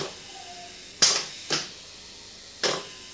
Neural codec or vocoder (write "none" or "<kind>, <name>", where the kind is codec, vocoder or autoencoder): none